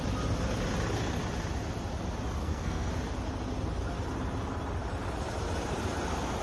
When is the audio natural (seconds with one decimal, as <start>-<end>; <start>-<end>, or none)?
0.0-2.4; 2.9-6.4